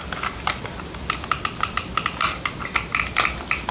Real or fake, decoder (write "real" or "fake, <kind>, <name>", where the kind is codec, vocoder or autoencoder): real